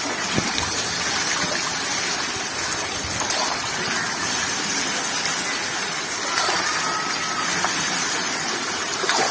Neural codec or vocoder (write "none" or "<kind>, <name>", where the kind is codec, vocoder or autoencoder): none